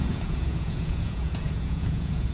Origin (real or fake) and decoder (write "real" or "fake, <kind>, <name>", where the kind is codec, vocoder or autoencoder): fake, vocoder, Vocos